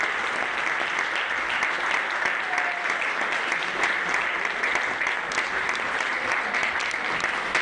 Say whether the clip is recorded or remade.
recorded